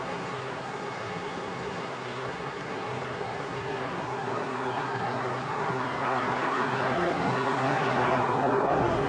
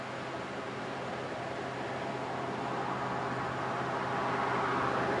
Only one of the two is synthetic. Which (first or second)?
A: first